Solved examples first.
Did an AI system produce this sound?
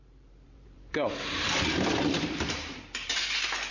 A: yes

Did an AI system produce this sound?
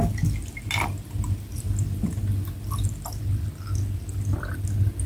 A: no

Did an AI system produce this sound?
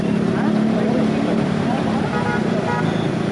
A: no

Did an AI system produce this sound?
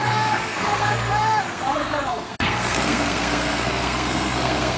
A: yes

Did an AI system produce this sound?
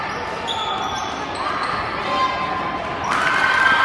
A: no